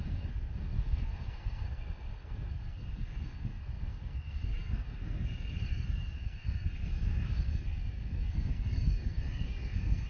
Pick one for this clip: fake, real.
fake